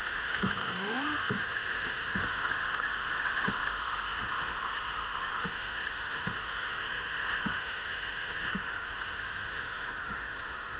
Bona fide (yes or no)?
no